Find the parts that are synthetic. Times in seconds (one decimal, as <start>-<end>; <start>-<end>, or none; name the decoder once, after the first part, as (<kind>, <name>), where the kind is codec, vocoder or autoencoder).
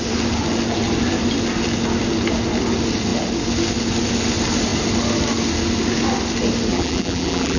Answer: 6.7-7.6 (vocoder, BigVGAN v2)